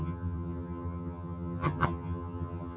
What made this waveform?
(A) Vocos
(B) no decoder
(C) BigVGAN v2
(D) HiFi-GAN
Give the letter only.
D